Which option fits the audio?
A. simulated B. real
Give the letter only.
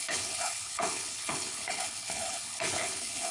A